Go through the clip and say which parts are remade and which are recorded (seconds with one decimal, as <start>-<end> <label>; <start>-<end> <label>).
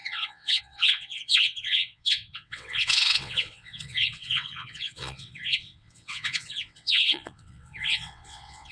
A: 0.0-8.7 remade